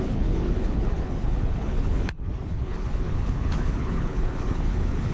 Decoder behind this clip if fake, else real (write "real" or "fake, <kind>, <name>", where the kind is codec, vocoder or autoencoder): fake, codec, HILCodec